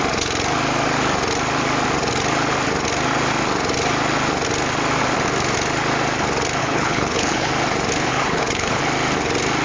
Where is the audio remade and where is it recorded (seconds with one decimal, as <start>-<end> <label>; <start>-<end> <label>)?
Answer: 0.0-6.6 recorded; 6.6-7.5 remade; 7.5-8.1 recorded; 8.1-8.8 remade; 8.8-9.6 recorded